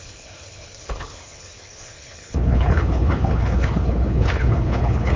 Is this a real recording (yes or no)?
no